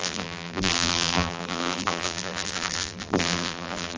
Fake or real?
fake